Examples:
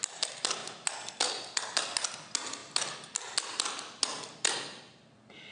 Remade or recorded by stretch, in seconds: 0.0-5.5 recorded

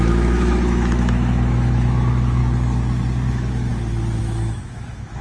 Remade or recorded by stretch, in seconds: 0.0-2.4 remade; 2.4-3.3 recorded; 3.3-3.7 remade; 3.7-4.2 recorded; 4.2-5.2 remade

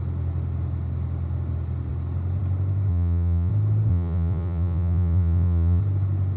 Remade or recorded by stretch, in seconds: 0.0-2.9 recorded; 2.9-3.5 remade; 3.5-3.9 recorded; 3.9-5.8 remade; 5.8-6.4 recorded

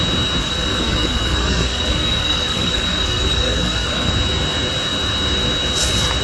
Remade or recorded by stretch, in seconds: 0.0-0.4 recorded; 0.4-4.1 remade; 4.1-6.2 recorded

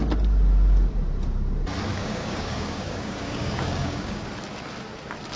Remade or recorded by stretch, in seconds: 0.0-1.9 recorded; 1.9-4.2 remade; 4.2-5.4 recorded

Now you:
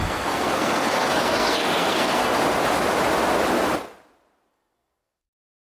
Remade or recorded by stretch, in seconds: 0.0-2.3 remade; 2.3-4.5 recorded; 4.5-5.8 remade